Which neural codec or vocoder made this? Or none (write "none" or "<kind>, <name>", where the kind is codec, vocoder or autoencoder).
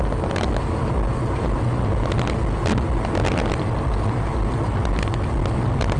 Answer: none